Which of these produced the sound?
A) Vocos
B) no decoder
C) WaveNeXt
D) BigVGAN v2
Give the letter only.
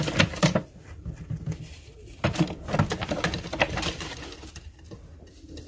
B